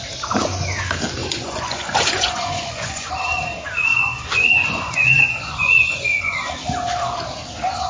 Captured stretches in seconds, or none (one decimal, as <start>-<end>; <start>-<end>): 0.0-1.2; 3.1-3.9; 6.5-7.9